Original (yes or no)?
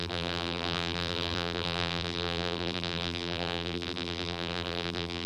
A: no